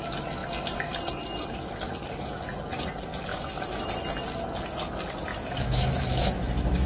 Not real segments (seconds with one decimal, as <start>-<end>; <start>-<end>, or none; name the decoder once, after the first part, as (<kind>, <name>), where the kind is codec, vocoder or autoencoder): 3.3-3.9 (autoencoder, DAC-VAE); 5.3-6.9

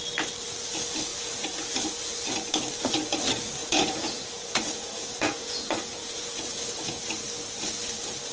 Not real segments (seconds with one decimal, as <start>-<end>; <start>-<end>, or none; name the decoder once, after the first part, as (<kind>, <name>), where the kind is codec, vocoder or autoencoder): 1.1-1.7 (vocoder, Vocos); 3.6-7.0